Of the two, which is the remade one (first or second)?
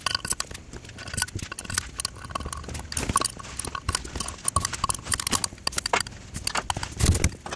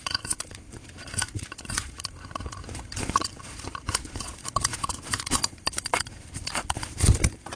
second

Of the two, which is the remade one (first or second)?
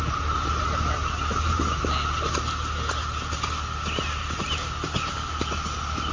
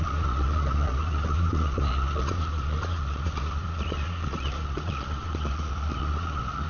second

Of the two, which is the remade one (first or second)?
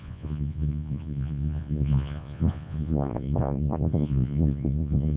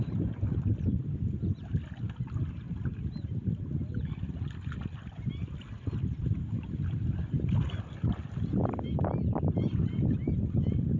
first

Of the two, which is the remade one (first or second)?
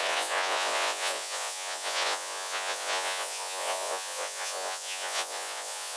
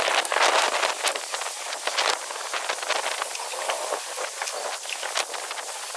first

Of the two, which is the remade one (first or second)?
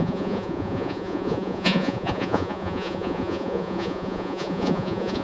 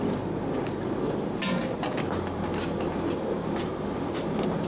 first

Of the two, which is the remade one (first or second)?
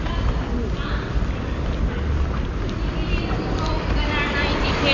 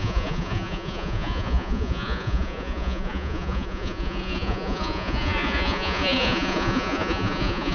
second